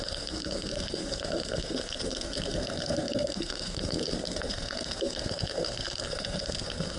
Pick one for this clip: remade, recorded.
remade